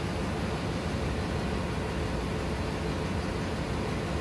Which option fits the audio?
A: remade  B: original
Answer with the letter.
B